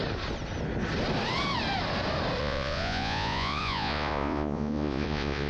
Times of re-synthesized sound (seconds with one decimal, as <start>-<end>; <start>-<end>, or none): 2.4-5.5